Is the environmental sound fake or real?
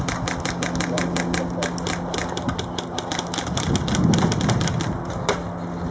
real